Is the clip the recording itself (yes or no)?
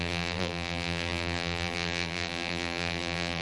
no